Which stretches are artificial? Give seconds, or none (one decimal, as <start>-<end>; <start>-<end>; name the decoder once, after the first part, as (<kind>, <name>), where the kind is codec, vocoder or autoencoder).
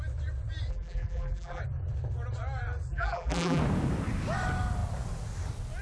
0.7-1.6 (vocoder, BigVGAN v2); 2.9-3.6